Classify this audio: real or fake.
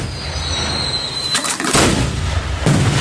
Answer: real